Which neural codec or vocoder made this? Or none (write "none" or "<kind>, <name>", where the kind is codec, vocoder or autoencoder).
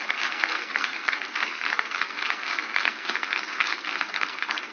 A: codec, SNAC